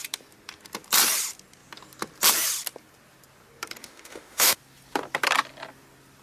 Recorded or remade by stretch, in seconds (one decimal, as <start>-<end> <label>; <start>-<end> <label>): 0.0-3.8 recorded; 3.8-4.6 remade; 4.6-6.2 recorded